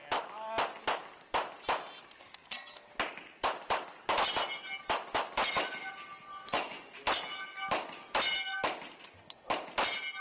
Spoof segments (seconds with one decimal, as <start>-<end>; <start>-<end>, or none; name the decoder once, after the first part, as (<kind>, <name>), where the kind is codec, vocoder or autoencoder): 6.3-6.9 (vocoder, Vocos)